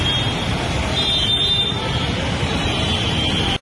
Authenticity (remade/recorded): recorded